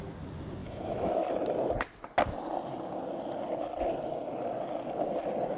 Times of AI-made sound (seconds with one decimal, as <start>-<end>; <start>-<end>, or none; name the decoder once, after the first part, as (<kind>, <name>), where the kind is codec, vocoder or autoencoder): 0.6-1.1 (autoencoder, DAC-VAE)